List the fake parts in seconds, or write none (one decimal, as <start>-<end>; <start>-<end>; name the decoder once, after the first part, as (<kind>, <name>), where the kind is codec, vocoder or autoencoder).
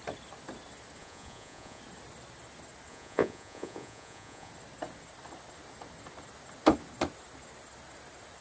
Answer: 1.0-1.8 (vocoder, Vocos); 2.9-4.5